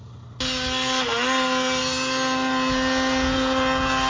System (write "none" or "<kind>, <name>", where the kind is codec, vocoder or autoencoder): none